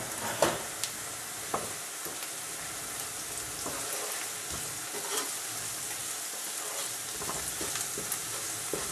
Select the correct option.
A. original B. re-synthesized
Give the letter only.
A